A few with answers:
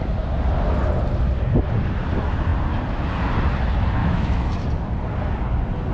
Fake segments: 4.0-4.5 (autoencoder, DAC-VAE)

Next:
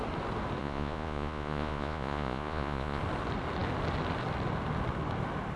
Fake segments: 0.6-3.0 (vocoder, Vocos)

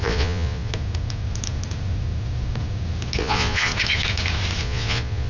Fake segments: 0.0-0.7 (vocoder, Vocos); 3.2-3.7; 4.6-5.3

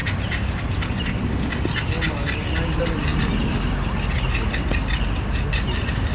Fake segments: none